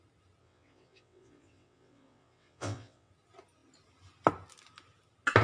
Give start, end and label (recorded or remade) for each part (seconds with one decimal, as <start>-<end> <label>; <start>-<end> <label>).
0.0-0.4 recorded; 0.4-3.1 remade; 3.1-5.4 recorded